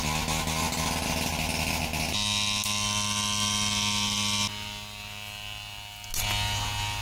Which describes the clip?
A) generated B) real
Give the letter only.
B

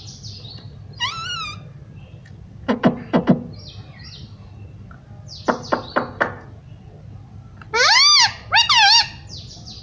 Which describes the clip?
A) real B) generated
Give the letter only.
A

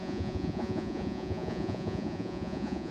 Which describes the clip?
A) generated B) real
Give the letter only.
A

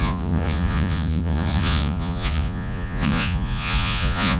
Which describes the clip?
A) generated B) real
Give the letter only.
A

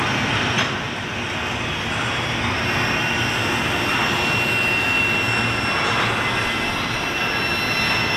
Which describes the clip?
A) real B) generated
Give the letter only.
A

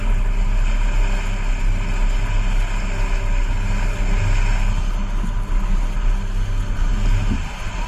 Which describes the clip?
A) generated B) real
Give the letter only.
B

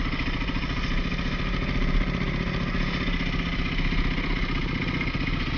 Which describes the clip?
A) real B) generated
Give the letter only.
A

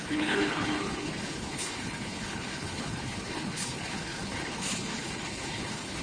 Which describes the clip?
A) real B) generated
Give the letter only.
B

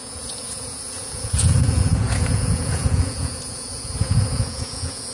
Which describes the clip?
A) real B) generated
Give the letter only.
B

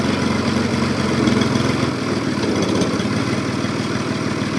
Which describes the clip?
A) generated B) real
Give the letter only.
B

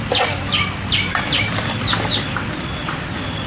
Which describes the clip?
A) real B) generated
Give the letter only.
A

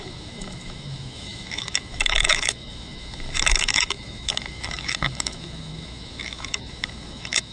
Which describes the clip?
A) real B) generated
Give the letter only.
B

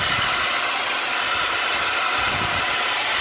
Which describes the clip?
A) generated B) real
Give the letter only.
B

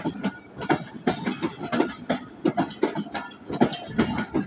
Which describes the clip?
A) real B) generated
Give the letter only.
A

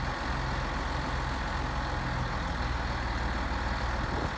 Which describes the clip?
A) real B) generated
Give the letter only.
A